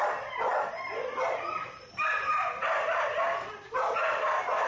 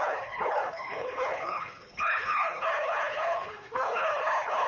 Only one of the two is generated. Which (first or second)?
second